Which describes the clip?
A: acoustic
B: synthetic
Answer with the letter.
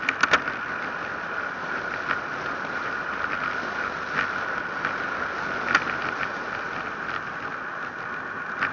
A